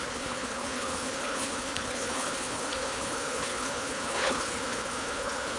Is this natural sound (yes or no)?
no